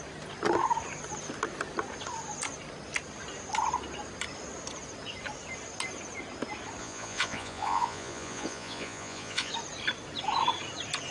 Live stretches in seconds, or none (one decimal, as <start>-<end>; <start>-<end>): 0.0-6.8; 9.5-11.1